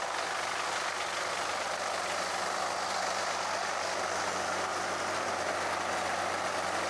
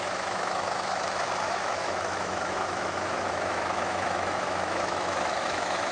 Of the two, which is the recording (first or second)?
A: first